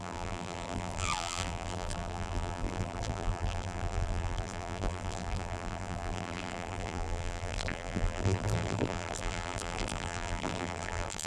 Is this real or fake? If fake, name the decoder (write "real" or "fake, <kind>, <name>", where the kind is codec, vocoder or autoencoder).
fake, vocoder, BigVGAN v2